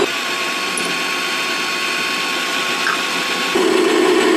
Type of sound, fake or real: real